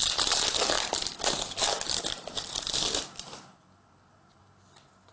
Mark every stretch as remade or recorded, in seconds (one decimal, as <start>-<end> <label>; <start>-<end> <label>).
0.0-5.1 recorded